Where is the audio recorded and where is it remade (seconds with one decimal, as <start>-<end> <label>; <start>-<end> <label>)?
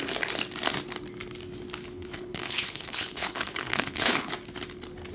0.0-1.9 recorded; 1.9-4.3 remade; 4.3-5.1 recorded